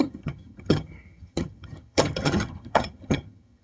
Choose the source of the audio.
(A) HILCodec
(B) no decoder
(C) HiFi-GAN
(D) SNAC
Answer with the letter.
C